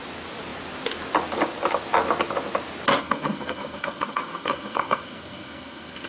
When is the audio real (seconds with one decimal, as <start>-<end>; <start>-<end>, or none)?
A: 0.0-3.0

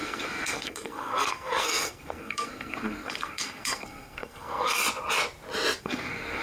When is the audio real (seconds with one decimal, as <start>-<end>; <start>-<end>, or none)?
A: 4.8-5.8